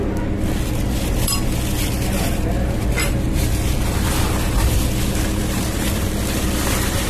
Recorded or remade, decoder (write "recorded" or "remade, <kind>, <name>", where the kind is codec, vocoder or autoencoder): remade, vocoder, BigVGAN v2